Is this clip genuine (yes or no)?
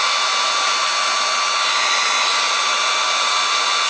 yes